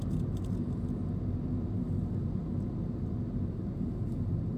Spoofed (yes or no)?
no